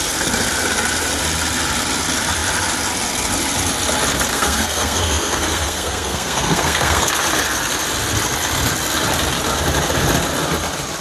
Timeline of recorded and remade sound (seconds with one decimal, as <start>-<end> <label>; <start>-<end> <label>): 0.0-4.3 recorded; 4.3-7.1 remade; 7.1-11.0 recorded